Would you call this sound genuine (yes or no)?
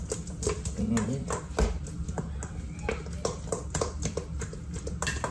yes